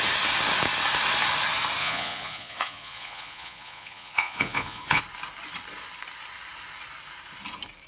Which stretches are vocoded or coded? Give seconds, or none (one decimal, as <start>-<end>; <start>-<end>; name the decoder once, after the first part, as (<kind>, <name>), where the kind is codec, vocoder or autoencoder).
1.8-5.0 (vocoder, Vocos)